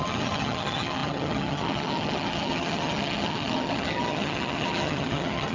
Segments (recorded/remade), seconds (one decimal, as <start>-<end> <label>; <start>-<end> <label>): 0.0-5.5 remade